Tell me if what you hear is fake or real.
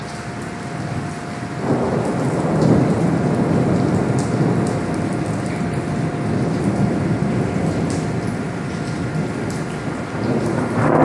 real